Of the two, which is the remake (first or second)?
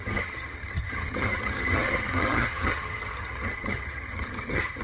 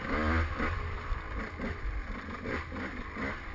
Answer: first